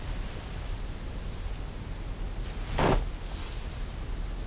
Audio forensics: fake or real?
real